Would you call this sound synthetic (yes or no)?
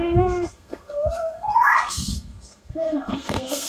yes